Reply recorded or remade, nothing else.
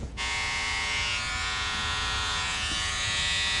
remade